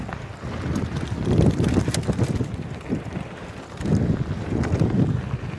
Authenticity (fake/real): real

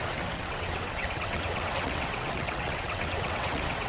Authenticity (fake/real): fake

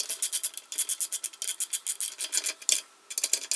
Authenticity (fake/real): real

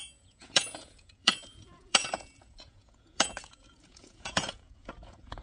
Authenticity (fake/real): fake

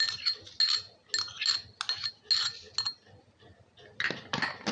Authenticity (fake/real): real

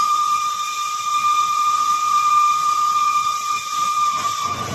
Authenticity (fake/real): fake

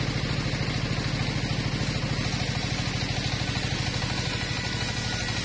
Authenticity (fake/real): real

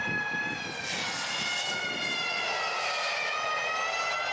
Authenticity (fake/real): real